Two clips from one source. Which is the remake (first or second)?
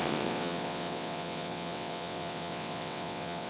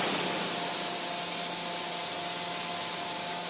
first